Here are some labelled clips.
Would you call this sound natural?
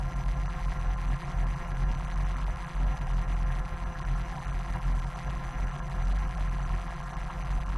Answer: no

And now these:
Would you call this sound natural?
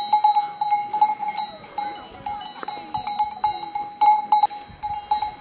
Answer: yes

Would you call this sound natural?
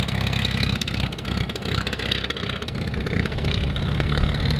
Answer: no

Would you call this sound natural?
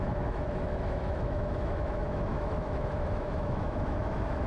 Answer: no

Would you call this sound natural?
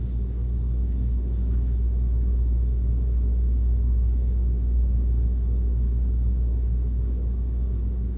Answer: no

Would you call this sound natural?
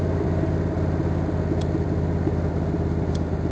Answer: yes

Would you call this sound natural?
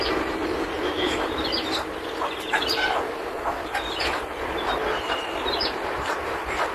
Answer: no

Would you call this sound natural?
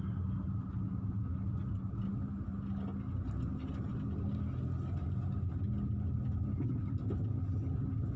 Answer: yes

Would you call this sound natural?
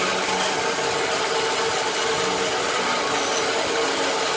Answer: yes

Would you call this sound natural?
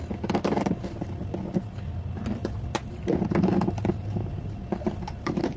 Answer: yes